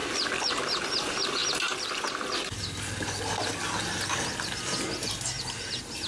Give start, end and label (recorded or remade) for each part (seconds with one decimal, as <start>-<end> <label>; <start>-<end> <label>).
0.0-0.6 remade; 0.6-6.1 recorded